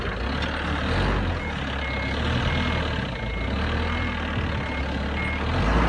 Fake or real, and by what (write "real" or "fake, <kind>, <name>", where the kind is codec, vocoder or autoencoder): real